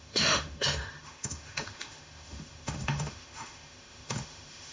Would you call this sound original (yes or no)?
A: no